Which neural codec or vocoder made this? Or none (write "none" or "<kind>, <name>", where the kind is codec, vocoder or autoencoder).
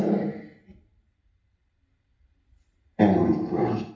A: vocoder, BigVGAN v2